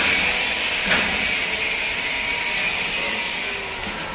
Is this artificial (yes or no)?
no